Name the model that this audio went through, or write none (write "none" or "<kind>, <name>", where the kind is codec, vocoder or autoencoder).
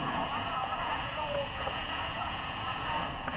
vocoder, Vocos